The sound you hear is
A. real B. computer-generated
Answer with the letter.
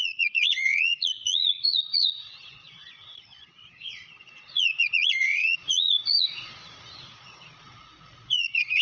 B